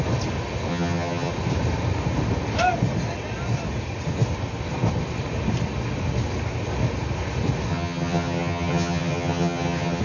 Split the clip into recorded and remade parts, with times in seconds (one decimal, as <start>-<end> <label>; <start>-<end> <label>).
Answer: 0.0-0.7 recorded; 0.7-1.3 remade; 1.3-7.7 recorded; 7.7-10.0 remade